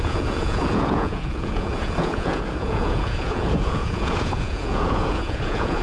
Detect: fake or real fake